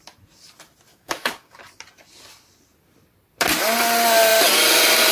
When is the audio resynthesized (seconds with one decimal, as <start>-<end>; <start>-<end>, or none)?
0.9-1.6